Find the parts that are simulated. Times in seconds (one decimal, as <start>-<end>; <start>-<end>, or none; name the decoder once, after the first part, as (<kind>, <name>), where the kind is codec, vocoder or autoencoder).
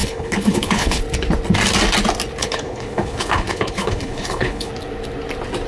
0.0-1.0 (codec, HILCodec); 2.4-4.7